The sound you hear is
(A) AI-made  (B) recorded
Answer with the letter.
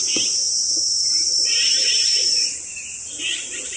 B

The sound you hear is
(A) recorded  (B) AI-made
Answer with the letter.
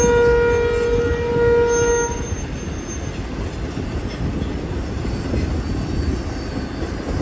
A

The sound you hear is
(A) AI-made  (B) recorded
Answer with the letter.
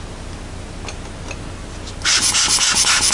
B